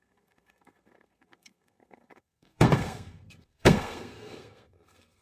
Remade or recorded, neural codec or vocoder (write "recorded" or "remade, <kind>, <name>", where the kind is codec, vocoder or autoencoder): remade, codec, SNAC